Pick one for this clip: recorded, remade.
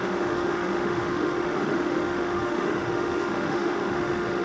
remade